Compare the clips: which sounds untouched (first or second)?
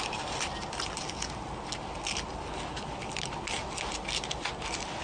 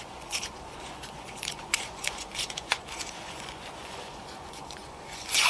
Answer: first